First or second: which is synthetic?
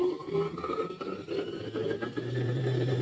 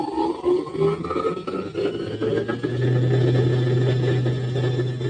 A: first